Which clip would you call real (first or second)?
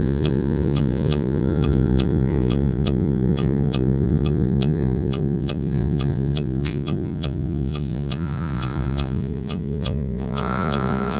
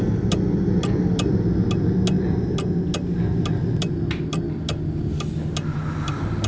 second